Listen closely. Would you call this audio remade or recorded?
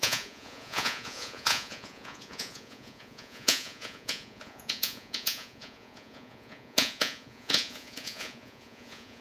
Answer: remade